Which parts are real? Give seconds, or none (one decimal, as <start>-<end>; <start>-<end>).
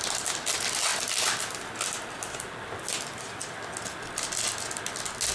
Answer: 0.0-5.3